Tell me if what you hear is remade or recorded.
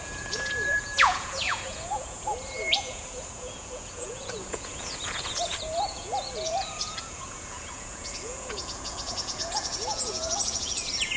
remade